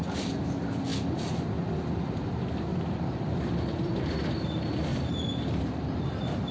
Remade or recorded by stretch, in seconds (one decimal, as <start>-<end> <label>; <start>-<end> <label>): 0.0-2.7 recorded; 2.7-3.9 remade; 3.9-4.9 recorded; 4.9-6.0 remade; 6.0-6.5 recorded